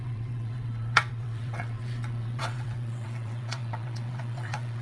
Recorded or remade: remade